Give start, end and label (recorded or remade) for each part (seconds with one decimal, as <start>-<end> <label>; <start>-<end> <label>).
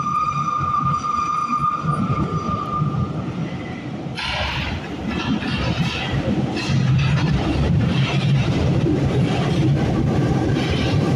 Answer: 0.0-1.4 remade; 1.4-2.0 recorded; 2.0-11.2 remade